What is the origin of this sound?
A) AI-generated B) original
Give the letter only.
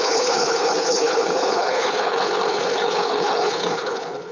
A